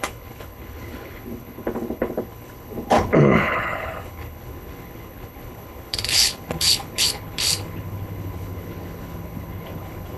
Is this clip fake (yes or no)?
yes